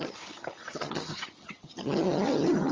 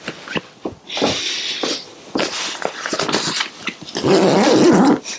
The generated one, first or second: first